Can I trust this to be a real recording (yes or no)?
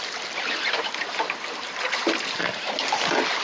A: yes